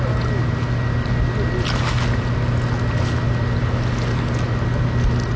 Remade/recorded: recorded